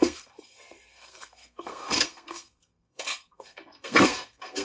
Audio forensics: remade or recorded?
remade